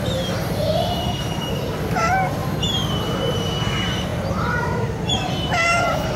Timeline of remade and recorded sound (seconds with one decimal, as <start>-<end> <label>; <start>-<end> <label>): 0.0-2.4 remade; 2.4-3.0 recorded; 3.0-6.2 remade